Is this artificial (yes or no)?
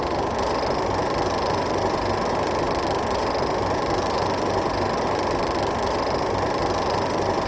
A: no